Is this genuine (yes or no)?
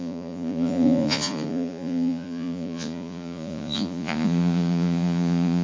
no